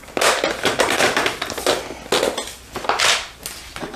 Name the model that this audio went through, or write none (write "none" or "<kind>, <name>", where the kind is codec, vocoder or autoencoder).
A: none